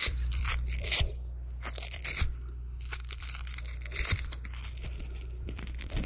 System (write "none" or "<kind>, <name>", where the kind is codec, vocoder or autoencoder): vocoder, BigVGAN v2